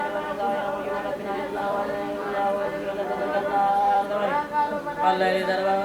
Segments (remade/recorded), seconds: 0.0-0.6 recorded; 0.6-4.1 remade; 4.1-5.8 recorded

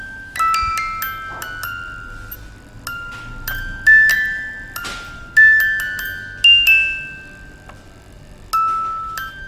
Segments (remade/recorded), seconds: 0.0-4.1 recorded; 4.1-4.8 remade; 4.8-9.5 recorded

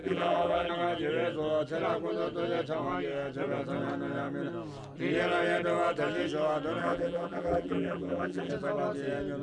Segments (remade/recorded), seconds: 0.0-0.7 remade; 0.7-6.8 recorded; 6.8-8.5 remade; 8.5-9.4 recorded